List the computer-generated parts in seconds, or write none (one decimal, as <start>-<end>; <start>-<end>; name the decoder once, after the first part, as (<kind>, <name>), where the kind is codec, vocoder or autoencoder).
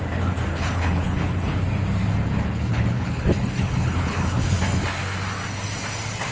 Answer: 0.5-1.6 (codec, HILCodec); 2.7-4.6